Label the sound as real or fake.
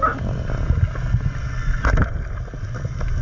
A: real